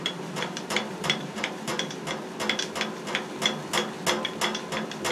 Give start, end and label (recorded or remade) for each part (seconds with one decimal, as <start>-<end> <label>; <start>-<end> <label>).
0.0-1.7 remade; 1.7-5.1 recorded